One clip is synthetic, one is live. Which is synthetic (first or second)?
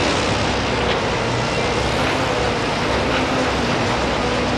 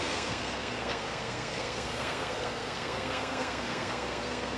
second